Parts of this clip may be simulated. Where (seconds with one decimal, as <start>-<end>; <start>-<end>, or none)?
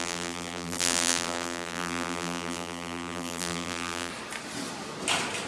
0.0-4.1